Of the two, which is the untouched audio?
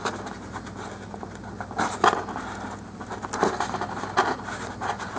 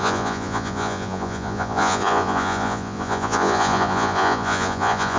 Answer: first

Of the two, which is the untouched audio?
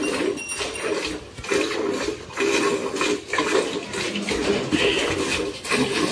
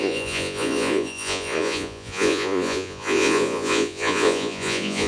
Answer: first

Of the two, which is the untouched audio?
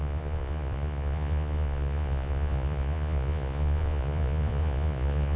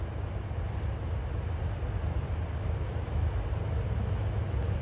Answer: second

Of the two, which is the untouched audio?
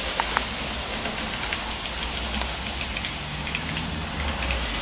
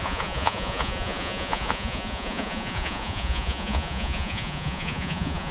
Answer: first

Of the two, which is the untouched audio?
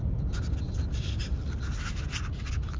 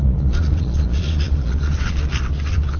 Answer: first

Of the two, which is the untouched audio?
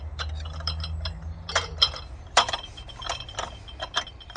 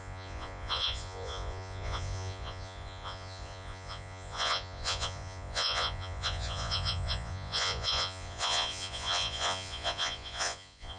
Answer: first